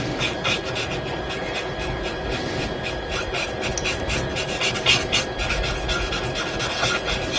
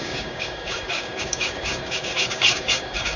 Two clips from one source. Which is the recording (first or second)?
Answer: first